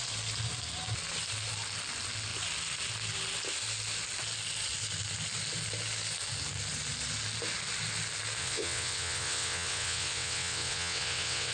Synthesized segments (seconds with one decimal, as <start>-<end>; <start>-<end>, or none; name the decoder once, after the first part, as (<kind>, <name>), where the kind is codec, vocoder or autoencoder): 8.4-11.5 (vocoder, WaveNeXt)